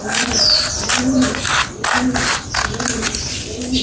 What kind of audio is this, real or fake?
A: real